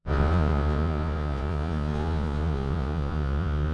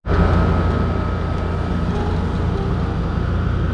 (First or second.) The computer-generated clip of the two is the first